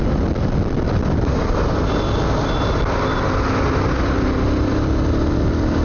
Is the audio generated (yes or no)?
no